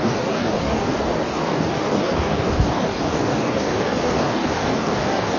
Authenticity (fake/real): fake